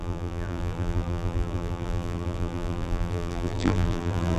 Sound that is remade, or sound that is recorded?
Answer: remade